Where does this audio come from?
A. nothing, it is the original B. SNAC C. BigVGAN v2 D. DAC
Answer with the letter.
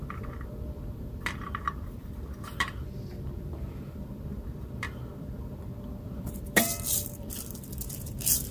C